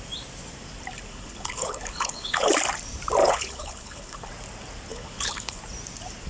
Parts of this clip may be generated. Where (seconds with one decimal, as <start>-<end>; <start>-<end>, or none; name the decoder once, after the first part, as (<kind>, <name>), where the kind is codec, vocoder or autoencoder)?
1.1-2.5 (codec, HILCodec); 3.2-4.3; 4.9-5.6